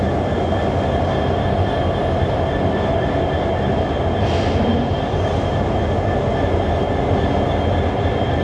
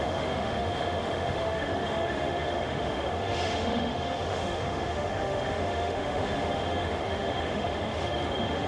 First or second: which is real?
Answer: first